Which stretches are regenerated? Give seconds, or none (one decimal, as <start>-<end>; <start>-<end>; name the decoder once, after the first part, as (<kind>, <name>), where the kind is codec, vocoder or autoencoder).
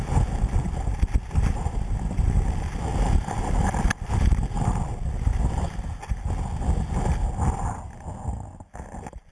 2.9-4.1 (vocoder, BigVGAN v2)